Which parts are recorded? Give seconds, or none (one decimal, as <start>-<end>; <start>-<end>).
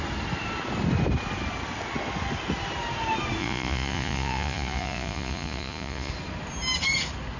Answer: 0.0-3.4; 6.1-7.4